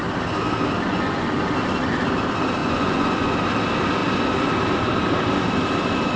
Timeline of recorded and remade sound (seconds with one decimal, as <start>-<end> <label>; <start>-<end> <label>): 0.0-0.9 recorded; 0.9-1.4 remade; 1.4-2.6 recorded; 2.6-3.3 remade; 3.3-6.2 recorded